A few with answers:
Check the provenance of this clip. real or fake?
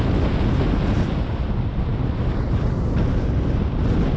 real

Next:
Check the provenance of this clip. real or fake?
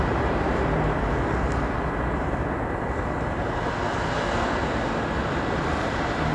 real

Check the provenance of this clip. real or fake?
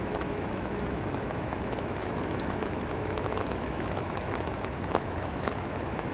fake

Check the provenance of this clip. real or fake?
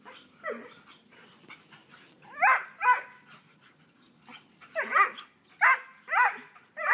real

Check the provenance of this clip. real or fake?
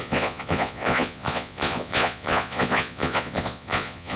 fake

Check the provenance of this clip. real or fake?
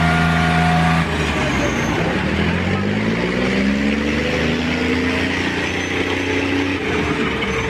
real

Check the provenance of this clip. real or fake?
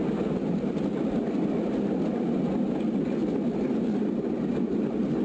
real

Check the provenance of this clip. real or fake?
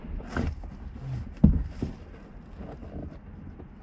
real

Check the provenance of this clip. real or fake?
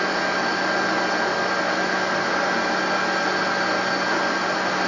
real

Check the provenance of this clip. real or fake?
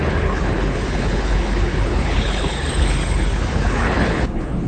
fake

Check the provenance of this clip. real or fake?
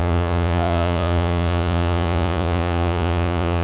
fake